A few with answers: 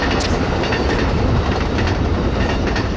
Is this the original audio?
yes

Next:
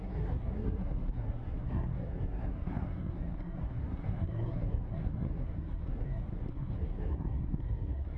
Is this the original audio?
no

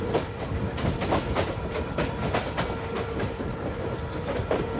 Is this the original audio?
yes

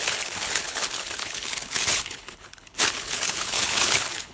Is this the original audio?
no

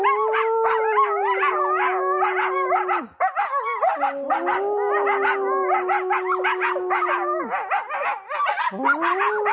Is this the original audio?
yes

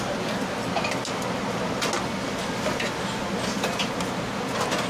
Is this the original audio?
yes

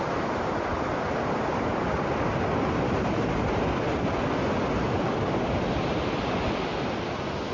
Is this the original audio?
yes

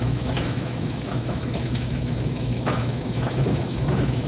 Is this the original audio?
no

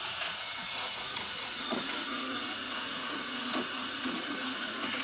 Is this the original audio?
no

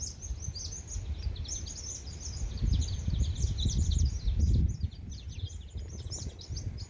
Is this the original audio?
yes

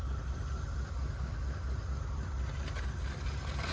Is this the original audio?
no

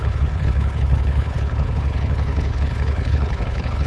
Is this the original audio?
no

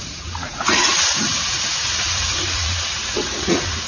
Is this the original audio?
no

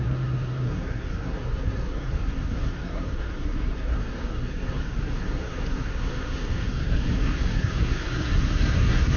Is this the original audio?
no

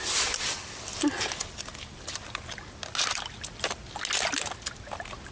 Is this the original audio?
yes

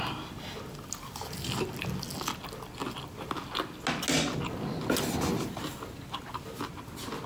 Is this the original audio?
yes